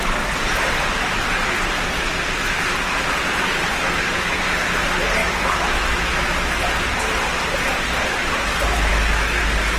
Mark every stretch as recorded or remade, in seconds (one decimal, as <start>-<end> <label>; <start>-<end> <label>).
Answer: 0.0-5.2 recorded; 5.2-6.3 remade; 6.3-8.9 recorded; 8.9-9.4 remade; 9.4-9.8 recorded